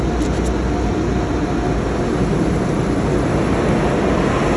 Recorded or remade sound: recorded